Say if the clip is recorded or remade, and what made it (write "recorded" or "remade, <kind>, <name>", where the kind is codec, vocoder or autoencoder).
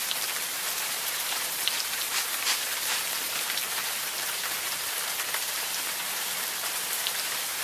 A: remade, vocoder, BigVGAN v2